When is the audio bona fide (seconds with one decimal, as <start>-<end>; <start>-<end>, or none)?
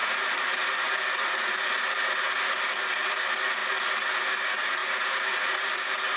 1.8-4.8; 5.4-6.2